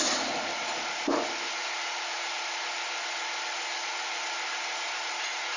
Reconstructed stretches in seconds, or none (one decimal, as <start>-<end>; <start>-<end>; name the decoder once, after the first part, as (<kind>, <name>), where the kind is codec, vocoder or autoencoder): none